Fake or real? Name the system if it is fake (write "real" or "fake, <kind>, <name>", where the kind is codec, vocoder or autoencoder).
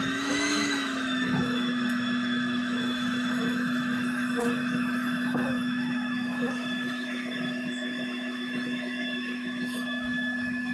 fake, autoencoder, DAC-VAE